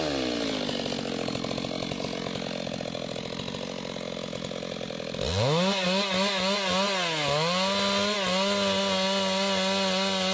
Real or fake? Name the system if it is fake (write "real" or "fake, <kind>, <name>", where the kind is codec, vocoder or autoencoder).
real